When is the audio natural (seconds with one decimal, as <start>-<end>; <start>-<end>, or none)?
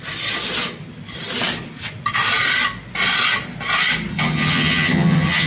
0.0-4.1